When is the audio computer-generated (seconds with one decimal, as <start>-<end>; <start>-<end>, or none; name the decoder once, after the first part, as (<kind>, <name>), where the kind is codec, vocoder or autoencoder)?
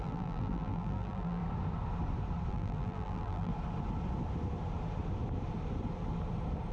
0.0-1.4 (vocoder, BigVGAN v2); 2.5-3.5